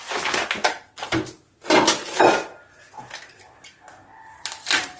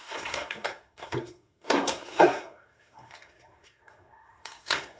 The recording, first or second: first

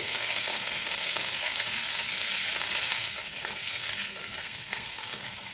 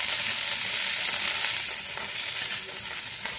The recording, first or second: second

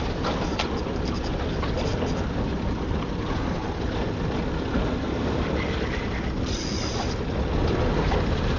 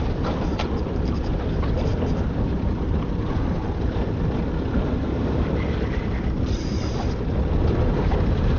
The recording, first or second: first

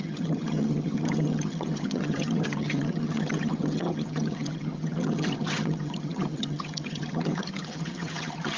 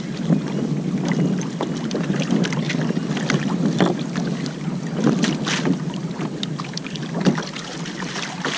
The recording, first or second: second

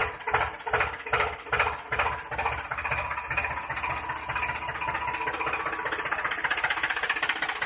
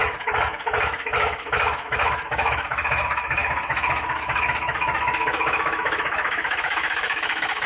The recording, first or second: first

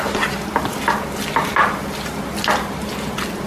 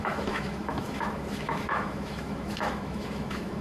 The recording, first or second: first